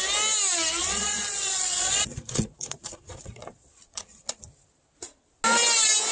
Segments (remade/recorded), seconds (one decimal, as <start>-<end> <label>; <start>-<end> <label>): 0.0-0.8 recorded; 0.8-4.4 remade; 4.4-6.1 recorded